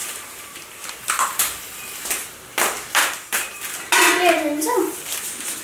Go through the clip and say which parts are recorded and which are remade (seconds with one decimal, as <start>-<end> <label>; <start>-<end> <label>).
0.0-0.9 remade; 0.9-3.0 recorded; 3.0-3.6 remade; 3.6-5.6 recorded